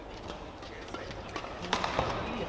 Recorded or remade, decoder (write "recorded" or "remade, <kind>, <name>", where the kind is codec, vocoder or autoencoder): recorded